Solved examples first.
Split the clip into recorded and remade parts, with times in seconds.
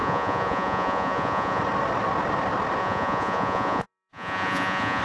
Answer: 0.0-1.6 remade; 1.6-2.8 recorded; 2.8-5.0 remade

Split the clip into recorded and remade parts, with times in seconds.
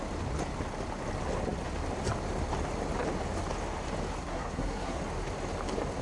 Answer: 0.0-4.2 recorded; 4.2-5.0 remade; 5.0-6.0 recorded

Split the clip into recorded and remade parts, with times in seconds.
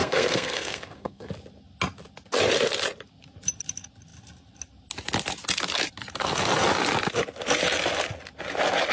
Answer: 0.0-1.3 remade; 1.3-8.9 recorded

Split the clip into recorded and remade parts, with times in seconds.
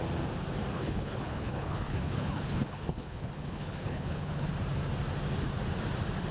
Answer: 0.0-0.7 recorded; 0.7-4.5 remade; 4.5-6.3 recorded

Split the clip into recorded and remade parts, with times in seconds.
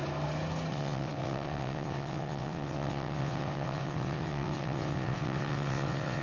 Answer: 0.0-0.7 recorded; 0.7-6.2 remade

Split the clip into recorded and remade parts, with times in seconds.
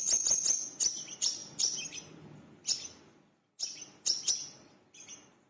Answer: 0.0-5.5 recorded